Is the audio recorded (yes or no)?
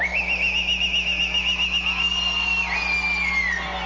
yes